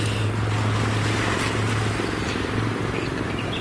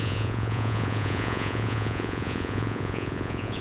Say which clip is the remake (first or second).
second